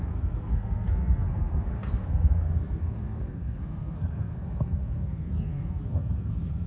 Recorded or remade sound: remade